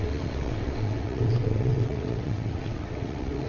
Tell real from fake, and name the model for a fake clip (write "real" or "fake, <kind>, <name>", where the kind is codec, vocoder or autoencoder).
fake, vocoder, WaveNeXt